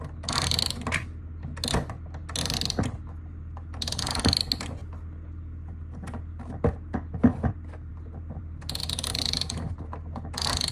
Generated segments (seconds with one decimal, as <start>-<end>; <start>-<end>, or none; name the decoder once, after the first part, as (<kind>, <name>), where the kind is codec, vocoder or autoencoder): none